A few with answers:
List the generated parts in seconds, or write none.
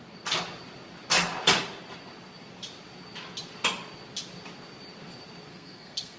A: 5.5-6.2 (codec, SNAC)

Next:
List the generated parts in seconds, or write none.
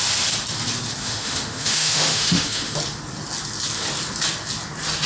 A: 1.0-2.8 (autoencoder, DAC-VAE)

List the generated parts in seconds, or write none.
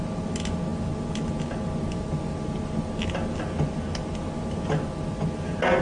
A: none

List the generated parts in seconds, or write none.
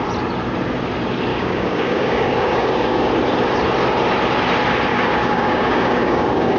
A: 1.3-3.1 (codec, DAC); 4.9-6.6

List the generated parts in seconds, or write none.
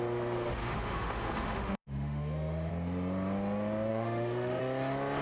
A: 0.6-2.7 (autoencoder, DAC-VAE); 3.9-4.6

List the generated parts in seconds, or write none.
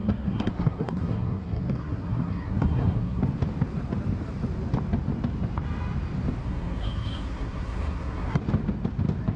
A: 0.0-3.2 (codec, SNAC); 6.4-8.4